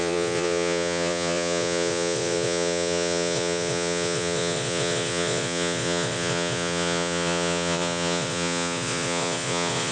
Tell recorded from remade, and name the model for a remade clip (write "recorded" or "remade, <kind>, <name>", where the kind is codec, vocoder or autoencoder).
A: remade, vocoder, Vocos